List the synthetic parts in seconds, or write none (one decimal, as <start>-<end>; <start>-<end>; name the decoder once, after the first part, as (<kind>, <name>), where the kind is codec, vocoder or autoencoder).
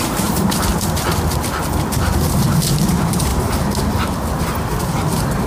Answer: 0.0-0.7 (vocoder, BigVGAN v2); 2.9-3.3; 4.4-5.5